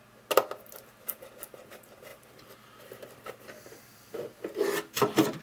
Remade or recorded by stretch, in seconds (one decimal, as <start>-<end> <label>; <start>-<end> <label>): 0.0-2.1 recorded; 2.1-5.4 remade